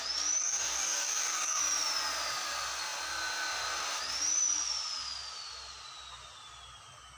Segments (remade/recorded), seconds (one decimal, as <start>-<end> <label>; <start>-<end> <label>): 0.0-0.4 recorded; 0.4-1.6 remade; 1.6-7.2 recorded